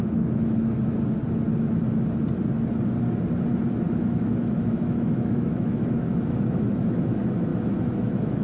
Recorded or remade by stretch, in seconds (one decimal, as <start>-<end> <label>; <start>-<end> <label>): 0.0-0.9 remade; 0.9-3.9 recorded; 3.9-8.4 remade

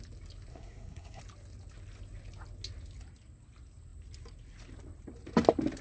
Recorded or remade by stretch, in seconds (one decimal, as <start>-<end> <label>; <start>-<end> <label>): 0.0-0.5 recorded; 0.5-1.2 remade; 1.2-5.8 recorded

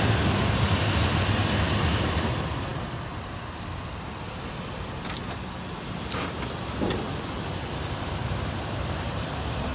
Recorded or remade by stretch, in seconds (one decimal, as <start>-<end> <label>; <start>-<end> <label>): 0.0-9.7 recorded

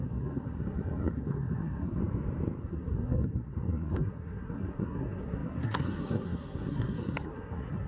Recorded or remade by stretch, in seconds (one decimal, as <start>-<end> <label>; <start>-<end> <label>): 0.0-2.0 remade; 2.0-2.6 recorded; 2.6-7.9 remade

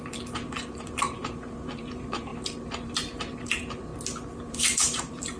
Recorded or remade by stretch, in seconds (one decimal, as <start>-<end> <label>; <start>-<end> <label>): 0.0-3.9 remade; 3.9-4.5 recorded; 4.5-5.4 remade

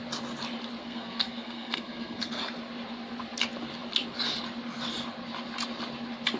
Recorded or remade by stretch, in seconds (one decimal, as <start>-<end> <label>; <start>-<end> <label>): 0.0-0.8 recorded; 0.8-2.4 remade; 2.4-6.4 recorded

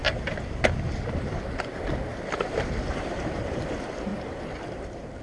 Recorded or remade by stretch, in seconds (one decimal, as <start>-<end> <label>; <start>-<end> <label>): 0.0-1.4 recorded; 1.4-2.1 remade; 2.1-2.8 recorded; 2.8-5.2 remade

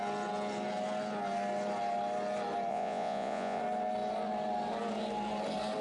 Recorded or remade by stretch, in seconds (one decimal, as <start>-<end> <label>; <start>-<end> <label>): 0.0-2.7 recorded; 2.7-3.6 remade; 3.6-5.8 recorded